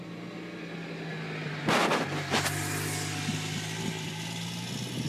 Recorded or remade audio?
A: recorded